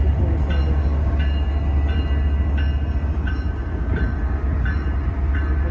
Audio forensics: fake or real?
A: real